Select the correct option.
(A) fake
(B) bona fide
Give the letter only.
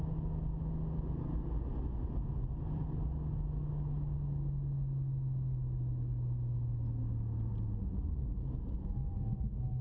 B